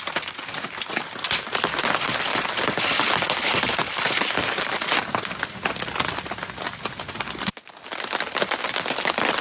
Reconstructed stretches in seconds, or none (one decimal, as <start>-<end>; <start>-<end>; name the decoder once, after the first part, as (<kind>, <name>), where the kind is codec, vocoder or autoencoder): none